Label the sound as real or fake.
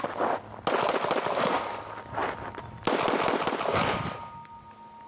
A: real